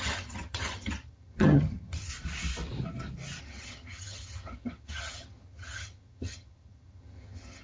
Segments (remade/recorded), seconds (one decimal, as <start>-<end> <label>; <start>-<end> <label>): 0.0-2.1 remade; 2.1-3.4 recorded; 3.4-7.6 remade